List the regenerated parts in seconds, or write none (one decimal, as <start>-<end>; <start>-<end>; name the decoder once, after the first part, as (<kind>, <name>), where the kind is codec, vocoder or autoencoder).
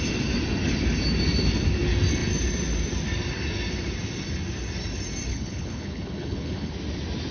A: 5.3-6.7 (codec, HILCodec)